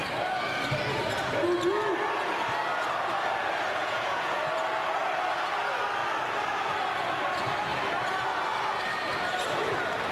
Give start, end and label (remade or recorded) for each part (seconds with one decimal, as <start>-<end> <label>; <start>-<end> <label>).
0.0-3.8 recorded; 3.8-4.4 remade; 4.4-10.1 recorded